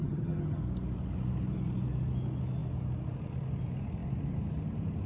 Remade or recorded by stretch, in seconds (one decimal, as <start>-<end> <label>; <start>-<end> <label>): 0.0-0.6 remade; 0.6-5.1 recorded